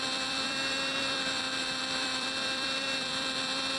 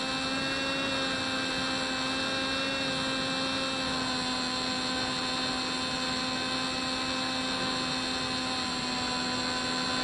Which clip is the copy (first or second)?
first